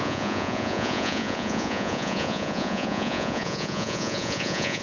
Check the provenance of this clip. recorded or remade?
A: remade